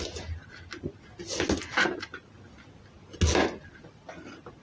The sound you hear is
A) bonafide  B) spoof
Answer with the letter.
A